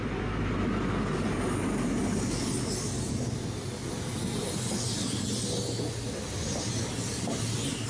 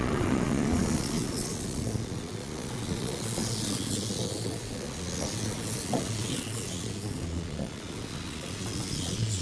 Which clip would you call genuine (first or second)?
first